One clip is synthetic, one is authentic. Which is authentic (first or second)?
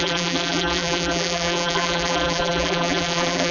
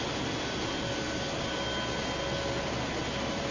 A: second